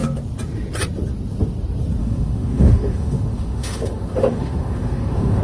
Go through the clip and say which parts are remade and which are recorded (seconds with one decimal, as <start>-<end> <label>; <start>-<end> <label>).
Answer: 0.0-2.0 recorded; 2.0-5.4 remade